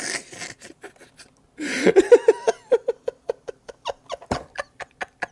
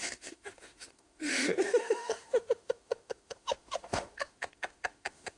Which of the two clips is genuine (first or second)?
first